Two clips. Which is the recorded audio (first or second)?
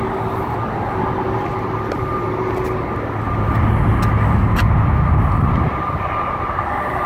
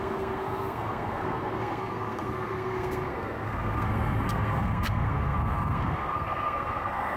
first